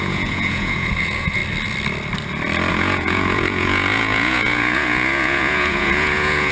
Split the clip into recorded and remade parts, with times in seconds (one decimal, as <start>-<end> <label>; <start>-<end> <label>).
0.0-1.4 remade; 1.4-2.7 recorded; 2.7-6.5 remade